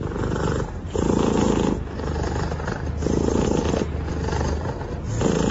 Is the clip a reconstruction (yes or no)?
no